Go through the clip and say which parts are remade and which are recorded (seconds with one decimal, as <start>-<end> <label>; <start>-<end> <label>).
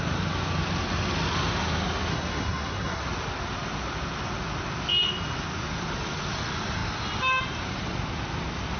0.0-2.1 recorded; 2.1-3.0 remade; 3.0-8.8 recorded